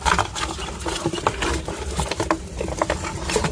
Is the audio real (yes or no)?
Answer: yes